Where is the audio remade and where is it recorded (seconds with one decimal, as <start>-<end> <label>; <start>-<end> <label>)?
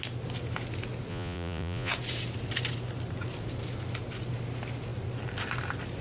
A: 0.0-1.1 recorded; 1.1-1.9 remade; 1.9-6.0 recorded